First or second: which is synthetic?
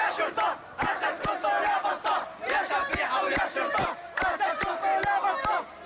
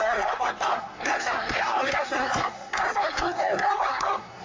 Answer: second